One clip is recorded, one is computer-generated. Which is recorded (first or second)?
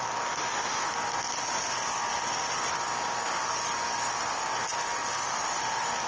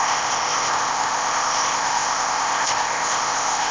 first